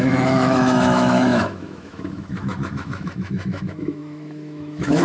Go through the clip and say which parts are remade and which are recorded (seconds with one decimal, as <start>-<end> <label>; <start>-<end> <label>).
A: 0.0-5.0 remade